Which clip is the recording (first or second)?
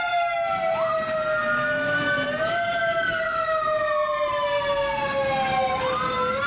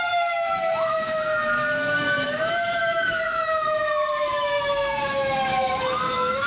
first